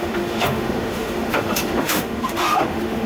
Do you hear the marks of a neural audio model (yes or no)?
yes